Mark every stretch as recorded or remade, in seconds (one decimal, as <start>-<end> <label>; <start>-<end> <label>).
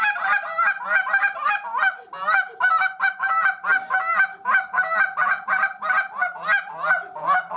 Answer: 0.0-7.6 recorded